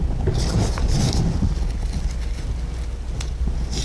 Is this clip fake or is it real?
real